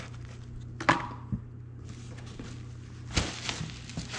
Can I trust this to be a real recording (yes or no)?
yes